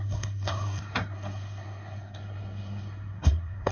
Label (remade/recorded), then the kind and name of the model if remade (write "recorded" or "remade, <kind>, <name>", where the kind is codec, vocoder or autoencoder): remade, codec, SNAC